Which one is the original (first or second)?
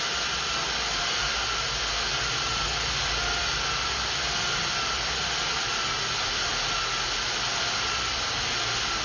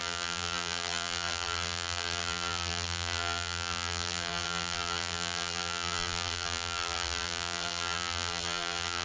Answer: first